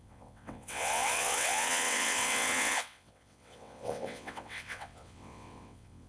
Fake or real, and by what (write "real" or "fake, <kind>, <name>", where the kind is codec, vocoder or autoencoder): fake, vocoder, WaveNeXt